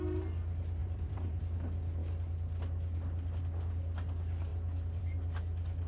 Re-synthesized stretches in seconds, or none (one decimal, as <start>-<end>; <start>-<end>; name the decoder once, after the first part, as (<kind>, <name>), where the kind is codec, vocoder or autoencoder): 0.8-1.4 (vocoder, BigVGAN v2)